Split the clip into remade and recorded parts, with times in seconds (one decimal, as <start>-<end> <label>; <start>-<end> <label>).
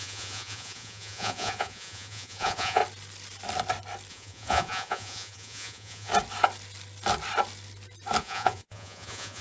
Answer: 0.0-2.8 remade; 2.8-4.1 recorded; 4.1-6.1 remade; 6.1-8.2 recorded; 8.2-9.4 remade